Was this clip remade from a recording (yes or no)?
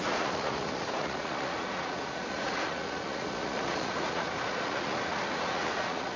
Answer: yes